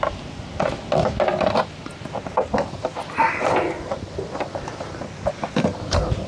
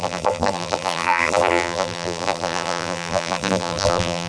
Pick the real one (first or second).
first